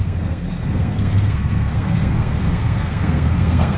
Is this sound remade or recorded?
remade